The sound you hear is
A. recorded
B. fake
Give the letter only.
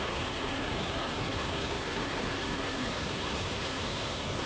B